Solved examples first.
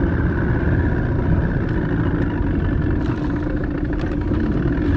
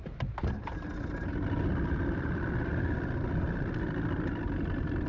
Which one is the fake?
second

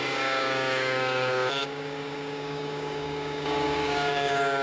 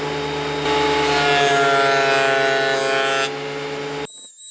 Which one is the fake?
first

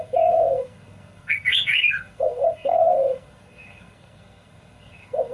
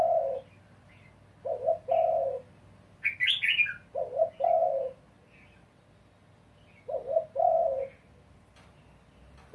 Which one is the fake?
first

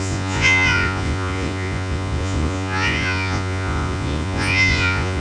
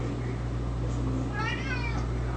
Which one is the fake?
first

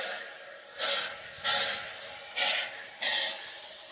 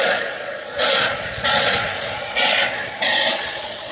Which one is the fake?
second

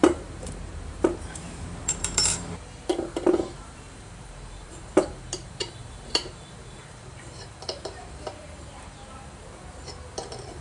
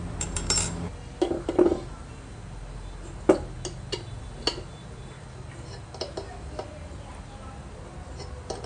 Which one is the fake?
first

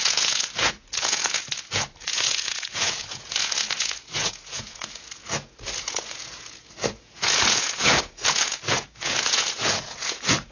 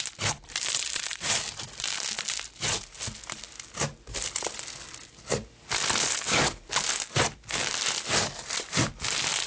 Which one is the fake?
first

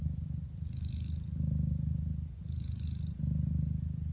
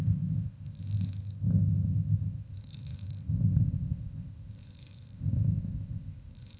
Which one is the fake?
second